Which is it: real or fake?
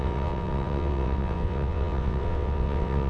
fake